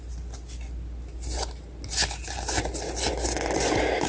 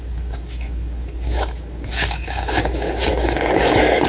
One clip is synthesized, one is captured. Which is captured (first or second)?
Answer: first